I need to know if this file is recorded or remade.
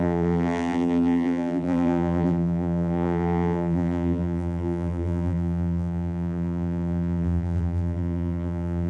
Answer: remade